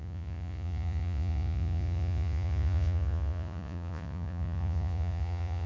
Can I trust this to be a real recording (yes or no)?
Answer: no